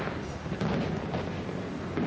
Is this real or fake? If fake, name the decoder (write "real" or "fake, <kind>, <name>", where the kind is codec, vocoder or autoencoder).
real